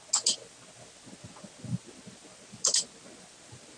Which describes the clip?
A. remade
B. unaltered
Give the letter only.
B